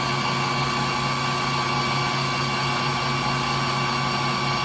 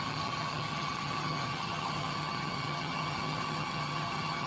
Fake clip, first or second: second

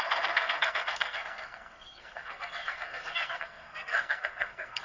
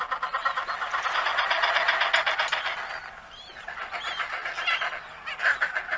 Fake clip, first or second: first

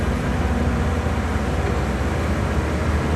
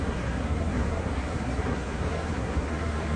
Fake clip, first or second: second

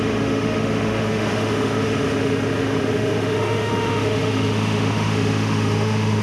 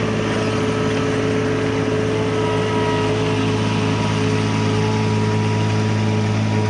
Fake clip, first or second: first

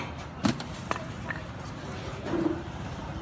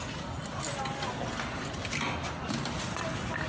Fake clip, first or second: first